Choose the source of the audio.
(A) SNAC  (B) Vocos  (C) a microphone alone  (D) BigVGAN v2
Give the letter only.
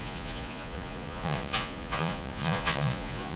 B